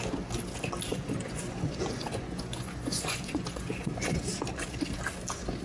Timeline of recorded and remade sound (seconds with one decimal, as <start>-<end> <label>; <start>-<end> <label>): 0.0-0.9 recorded; 0.9-4.3 remade; 4.3-5.6 recorded